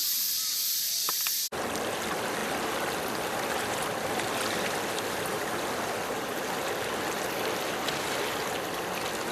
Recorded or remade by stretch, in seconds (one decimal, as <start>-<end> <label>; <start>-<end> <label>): 0.0-9.3 recorded